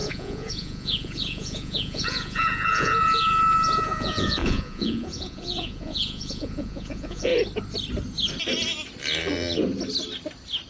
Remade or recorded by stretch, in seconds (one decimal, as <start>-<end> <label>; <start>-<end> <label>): 0.0-7.3 remade; 7.3-10.7 recorded